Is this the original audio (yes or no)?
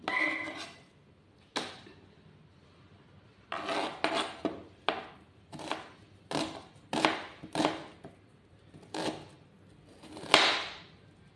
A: yes